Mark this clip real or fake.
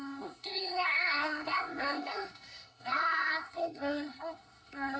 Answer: fake